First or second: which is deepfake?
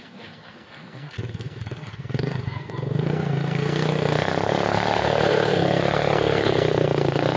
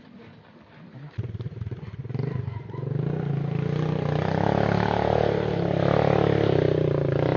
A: first